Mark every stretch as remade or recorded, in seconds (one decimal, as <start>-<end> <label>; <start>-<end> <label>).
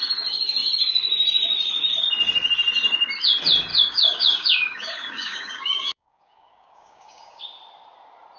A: 0.0-3.7 recorded; 3.7-7.4 remade; 7.4-8.4 recorded